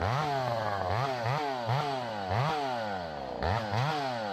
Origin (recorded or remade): recorded